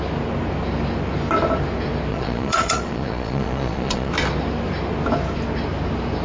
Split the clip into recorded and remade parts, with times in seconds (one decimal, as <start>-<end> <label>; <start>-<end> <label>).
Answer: 0.0-2.1 recorded; 2.1-4.1 remade; 4.1-6.2 recorded